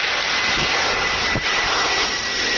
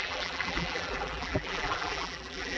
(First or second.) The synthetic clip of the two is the second